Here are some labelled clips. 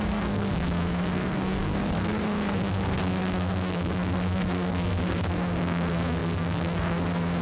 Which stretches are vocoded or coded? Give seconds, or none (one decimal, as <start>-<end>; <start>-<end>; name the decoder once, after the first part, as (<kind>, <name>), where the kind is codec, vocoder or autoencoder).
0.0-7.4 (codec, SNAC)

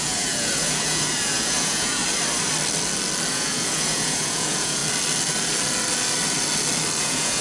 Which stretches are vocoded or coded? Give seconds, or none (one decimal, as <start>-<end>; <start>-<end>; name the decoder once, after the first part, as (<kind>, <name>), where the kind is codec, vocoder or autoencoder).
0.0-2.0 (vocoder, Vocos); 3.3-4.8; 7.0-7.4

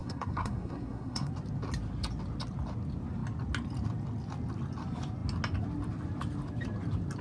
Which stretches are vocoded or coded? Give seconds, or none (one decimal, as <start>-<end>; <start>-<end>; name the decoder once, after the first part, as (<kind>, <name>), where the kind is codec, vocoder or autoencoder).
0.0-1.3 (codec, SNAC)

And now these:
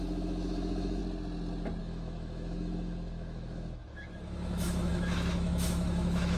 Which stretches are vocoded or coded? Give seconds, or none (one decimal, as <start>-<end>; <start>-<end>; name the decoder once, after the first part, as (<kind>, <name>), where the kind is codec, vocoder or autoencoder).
0.0-1.0 (autoencoder, DAC-VAE); 1.8-6.4

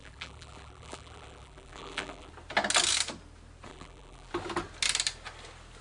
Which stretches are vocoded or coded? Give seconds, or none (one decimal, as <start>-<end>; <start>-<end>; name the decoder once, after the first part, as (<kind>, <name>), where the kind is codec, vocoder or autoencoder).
0.0-2.3 (vocoder, BigVGAN v2); 3.7-4.3

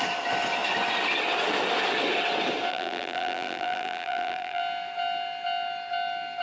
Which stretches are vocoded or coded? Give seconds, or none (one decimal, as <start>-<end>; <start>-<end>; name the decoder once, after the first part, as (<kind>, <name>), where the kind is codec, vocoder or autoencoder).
2.7-4.6 (vocoder, BigVGAN v2)

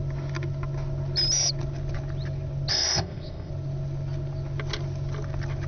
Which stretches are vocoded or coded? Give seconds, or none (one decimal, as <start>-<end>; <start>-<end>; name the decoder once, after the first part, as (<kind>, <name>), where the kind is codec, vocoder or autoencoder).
2.7-3.5 (codec, ZipCodec)

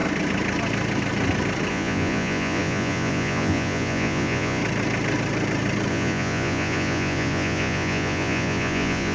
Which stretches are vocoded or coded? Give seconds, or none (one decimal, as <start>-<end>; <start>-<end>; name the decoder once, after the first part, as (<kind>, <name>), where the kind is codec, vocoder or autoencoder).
1.7-4.6 (vocoder, Vocos); 5.9-9.1